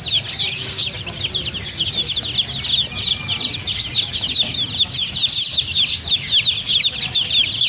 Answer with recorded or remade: recorded